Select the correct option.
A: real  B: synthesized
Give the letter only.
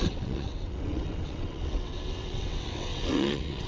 B